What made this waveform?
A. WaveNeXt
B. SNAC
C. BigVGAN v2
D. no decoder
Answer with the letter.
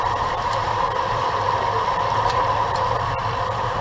C